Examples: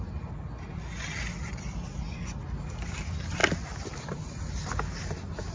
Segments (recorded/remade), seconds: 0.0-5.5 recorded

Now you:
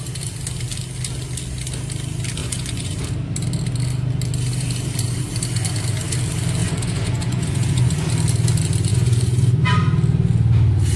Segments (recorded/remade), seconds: 0.0-2.4 recorded; 2.4-3.0 remade; 3.0-6.6 recorded; 6.6-8.1 remade; 8.1-8.9 recorded; 8.9-9.7 remade; 9.7-11.0 recorded

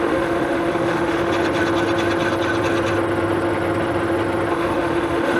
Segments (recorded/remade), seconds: 0.0-1.3 remade; 1.3-4.5 recorded; 4.5-5.4 remade

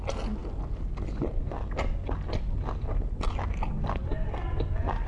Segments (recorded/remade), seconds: 0.0-5.1 recorded

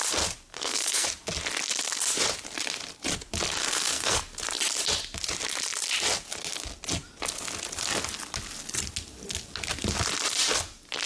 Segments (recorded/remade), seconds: 0.0-0.5 recorded; 0.5-1.1 remade; 1.1-3.6 recorded; 3.6-4.2 remade; 4.2-11.1 recorded

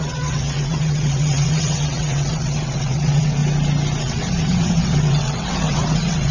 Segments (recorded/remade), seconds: 0.0-3.4 remade; 3.4-4.0 recorded; 4.0-6.3 remade

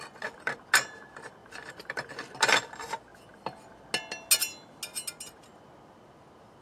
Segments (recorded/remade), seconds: 0.0-1.4 recorded; 1.4-2.1 remade; 2.1-6.6 recorded